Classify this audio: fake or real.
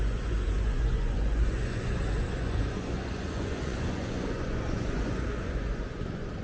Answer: fake